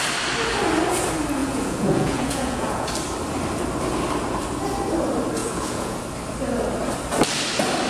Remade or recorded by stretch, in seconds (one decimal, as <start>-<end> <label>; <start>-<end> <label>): 0.0-1.4 recorded; 1.4-2.9 remade; 2.9-5.4 recorded; 5.4-6.0 remade; 6.0-7.9 recorded